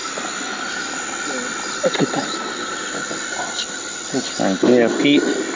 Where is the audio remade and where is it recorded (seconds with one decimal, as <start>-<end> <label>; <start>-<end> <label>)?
0.0-5.6 recorded